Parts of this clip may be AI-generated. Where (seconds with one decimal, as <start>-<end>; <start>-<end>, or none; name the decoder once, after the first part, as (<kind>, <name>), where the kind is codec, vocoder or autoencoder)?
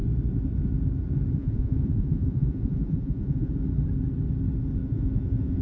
1.4-3.5 (vocoder, Vocos); 4.8-5.6